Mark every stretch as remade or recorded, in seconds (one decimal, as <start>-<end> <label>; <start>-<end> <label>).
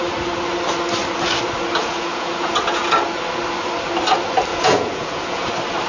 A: 0.0-1.8 recorded; 1.8-2.9 remade; 2.9-4.5 recorded; 4.5-5.5 remade; 5.5-5.9 recorded